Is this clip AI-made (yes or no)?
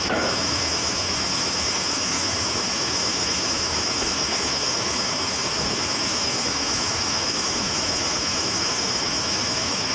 yes